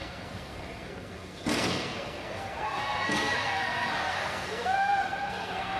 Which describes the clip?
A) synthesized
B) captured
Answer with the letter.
A